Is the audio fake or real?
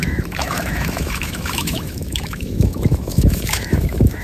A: fake